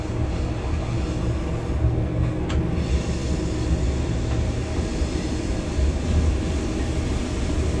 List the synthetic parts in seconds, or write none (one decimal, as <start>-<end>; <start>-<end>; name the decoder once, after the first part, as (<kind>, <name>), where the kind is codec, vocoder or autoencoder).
1.8-2.5 (codec, SNAC)